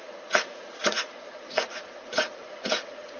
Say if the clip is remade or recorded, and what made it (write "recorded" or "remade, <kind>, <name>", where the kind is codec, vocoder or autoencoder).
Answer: remade, vocoder, Vocos